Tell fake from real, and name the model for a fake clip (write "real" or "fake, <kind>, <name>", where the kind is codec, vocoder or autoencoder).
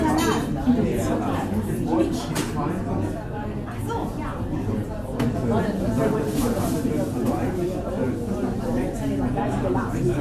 real